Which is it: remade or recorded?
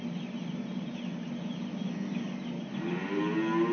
recorded